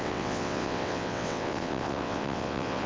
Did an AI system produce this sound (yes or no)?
yes